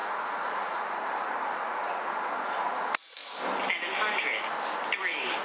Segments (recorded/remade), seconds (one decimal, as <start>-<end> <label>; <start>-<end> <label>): 0.0-2.2 remade; 2.2-5.4 recorded